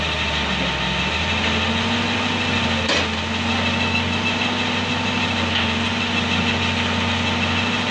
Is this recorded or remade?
recorded